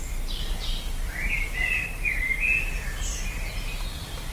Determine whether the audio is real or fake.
real